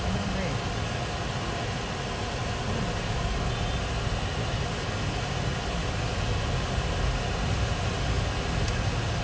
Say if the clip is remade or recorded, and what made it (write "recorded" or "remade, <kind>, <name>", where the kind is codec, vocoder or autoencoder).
recorded